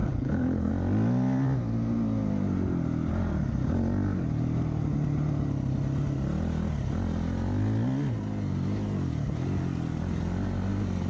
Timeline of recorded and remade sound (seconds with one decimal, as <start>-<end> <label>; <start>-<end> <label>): 0.0-0.7 remade; 0.7-11.1 recorded